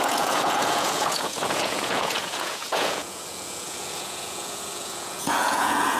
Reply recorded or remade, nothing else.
remade